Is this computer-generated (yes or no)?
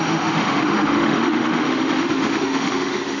yes